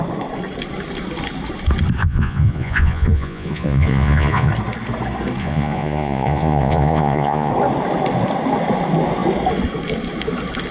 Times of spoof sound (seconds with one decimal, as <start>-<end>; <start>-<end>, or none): 2.0-4.5; 5.4-7.5